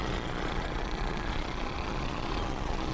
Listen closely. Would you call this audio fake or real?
fake